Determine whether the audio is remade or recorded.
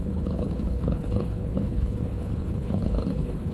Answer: remade